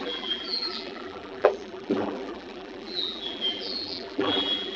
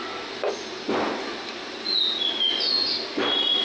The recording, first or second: second